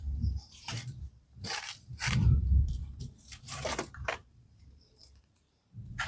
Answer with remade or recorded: remade